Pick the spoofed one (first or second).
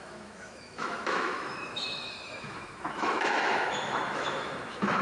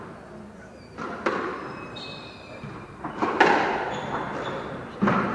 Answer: first